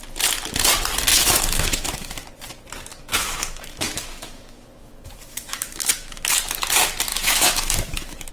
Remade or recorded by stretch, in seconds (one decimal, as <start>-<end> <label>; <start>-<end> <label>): 0.0-1.1 recorded; 1.1-2.3 remade; 2.3-2.9 recorded; 2.9-6.4 remade; 6.4-7.1 recorded; 7.1-8.3 remade